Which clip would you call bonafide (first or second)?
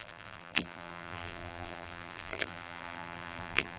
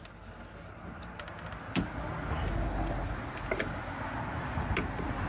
second